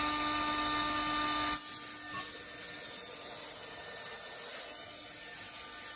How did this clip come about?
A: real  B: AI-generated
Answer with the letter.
A